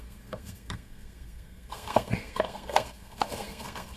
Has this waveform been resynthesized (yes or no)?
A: yes